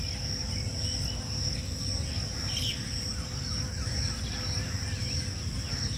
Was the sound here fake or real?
real